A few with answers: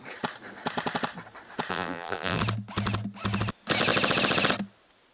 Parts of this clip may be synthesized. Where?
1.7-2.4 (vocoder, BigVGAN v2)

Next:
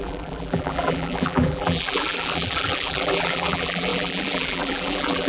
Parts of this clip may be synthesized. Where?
0.0-5.3 (vocoder, BigVGAN v2)